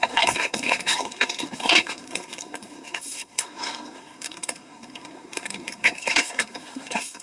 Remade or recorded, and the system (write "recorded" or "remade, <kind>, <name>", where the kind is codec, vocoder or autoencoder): remade, codec, SNAC